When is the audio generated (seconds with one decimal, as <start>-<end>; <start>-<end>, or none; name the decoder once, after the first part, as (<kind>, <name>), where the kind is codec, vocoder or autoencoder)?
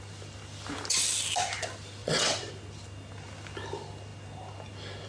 2.0-2.5 (vocoder, WaveNeXt)